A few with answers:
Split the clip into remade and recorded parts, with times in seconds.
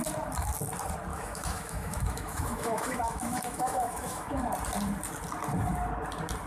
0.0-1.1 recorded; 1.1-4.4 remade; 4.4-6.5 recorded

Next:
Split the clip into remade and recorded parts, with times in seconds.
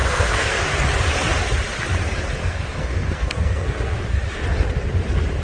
0.0-0.6 remade; 0.6-2.4 recorded; 2.4-4.1 remade; 4.1-5.4 recorded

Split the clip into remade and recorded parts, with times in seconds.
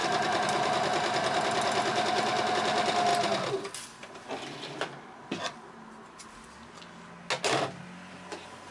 0.0-8.7 recorded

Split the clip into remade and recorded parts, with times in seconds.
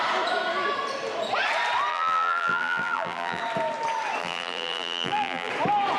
0.0-1.9 recorded; 1.9-3.4 remade; 3.4-4.2 recorded; 4.2-5.5 remade; 5.5-6.0 recorded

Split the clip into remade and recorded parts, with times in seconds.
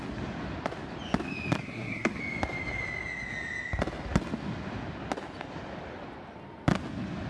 0.0-1.6 recorded; 1.6-2.2 remade; 2.2-7.3 recorded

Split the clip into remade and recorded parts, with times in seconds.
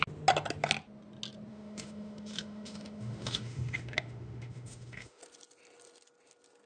0.0-1.5 recorded; 1.5-5.2 remade; 5.2-6.7 recorded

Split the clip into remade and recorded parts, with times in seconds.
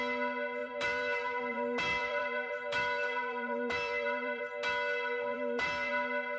0.0-0.6 recorded; 0.6-4.4 remade; 4.4-5.3 recorded; 5.3-5.9 remade; 5.9-6.4 recorded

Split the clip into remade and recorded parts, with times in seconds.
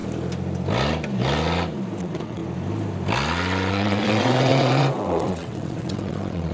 0.0-2.0 recorded; 2.0-2.4 remade; 2.4-3.7 recorded; 3.7-6.5 remade